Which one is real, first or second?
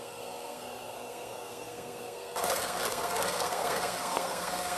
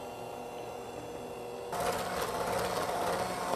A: second